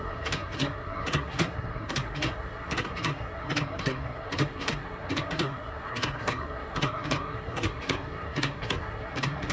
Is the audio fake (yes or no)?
yes